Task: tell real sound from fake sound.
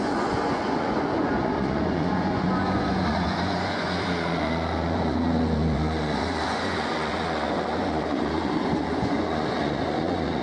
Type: fake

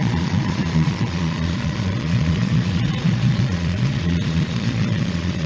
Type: fake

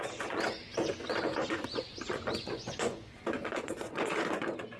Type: fake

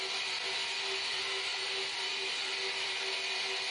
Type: real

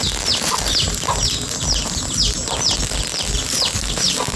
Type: real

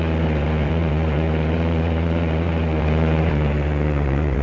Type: fake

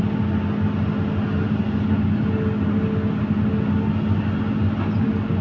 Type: real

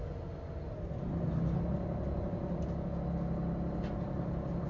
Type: real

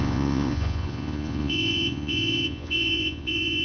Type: fake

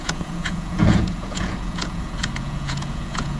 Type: fake